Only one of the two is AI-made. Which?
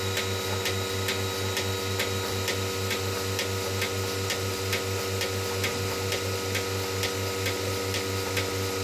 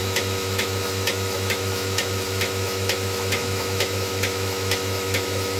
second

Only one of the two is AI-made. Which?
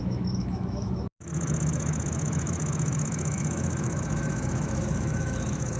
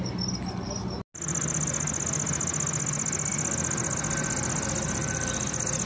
first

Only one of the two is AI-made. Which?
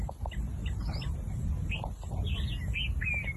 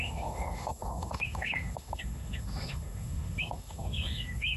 second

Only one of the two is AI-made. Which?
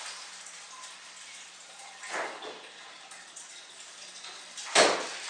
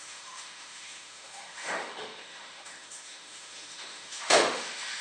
second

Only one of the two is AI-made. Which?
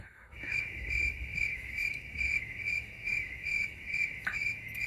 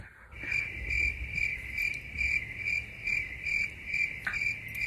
first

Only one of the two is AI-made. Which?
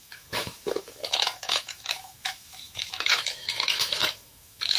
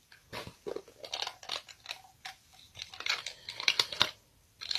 first